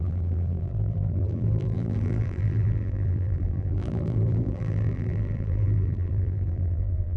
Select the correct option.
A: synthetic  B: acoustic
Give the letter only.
A